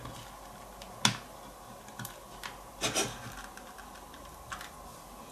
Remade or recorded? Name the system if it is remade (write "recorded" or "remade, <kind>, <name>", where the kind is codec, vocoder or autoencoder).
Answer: recorded